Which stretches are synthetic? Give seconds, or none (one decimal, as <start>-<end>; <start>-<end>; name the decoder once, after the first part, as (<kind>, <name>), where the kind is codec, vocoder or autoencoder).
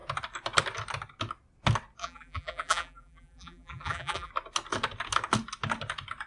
2.0-4.3 (vocoder, BigVGAN v2)